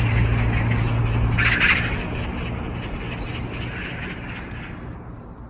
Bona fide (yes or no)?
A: yes